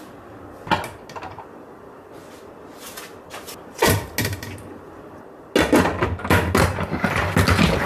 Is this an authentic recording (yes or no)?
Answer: yes